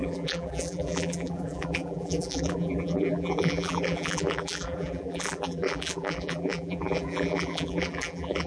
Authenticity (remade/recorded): remade